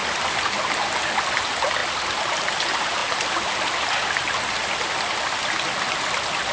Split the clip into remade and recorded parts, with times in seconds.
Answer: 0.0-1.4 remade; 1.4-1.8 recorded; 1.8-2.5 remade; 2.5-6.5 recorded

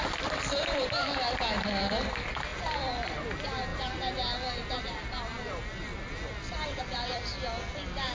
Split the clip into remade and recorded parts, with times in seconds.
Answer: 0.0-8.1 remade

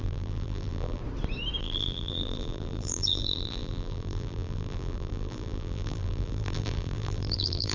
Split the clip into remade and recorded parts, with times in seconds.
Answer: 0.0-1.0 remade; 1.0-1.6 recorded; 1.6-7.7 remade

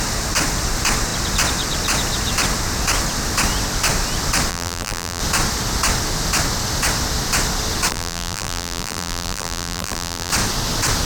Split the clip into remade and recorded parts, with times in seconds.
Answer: 0.0-4.5 recorded; 4.5-5.2 remade; 5.2-7.9 recorded; 7.9-10.3 remade; 10.3-11.0 recorded

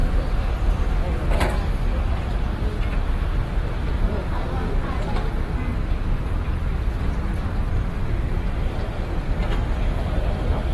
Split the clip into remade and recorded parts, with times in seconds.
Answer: 0.0-0.6 remade; 0.6-10.7 recorded